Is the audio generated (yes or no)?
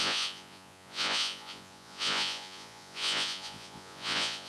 yes